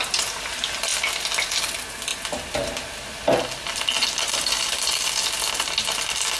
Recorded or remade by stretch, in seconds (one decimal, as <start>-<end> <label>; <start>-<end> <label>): 0.0-6.4 recorded